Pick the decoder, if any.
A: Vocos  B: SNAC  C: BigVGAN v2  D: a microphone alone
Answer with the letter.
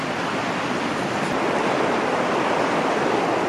C